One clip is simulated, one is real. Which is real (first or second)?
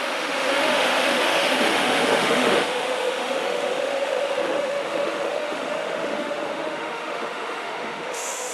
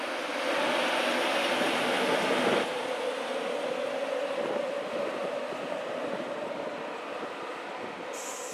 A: second